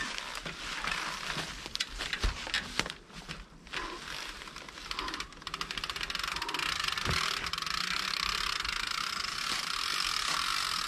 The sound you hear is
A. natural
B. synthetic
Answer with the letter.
A